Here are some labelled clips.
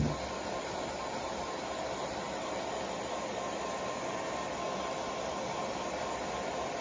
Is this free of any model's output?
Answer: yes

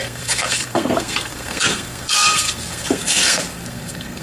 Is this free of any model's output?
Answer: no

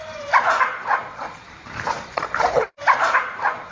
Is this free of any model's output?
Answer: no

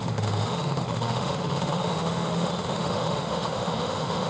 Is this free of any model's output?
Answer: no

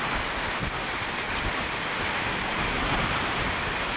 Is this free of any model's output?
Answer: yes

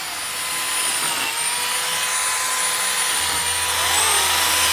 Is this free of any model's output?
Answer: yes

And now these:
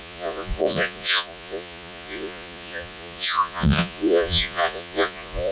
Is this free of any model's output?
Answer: no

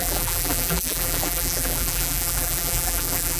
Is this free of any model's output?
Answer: no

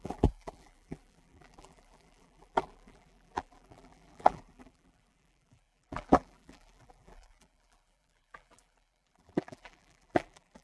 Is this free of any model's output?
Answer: no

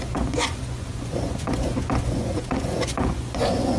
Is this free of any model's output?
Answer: no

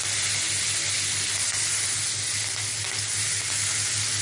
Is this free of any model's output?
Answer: yes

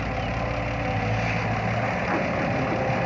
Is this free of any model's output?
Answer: yes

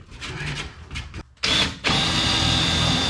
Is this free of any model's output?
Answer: yes